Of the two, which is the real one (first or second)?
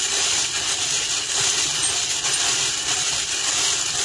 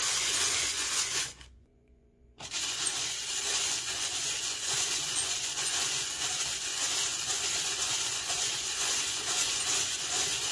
first